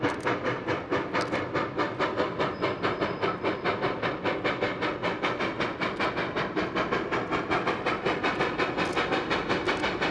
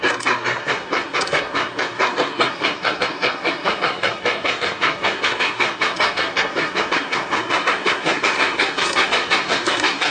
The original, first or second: first